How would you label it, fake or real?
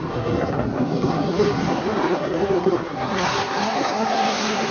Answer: fake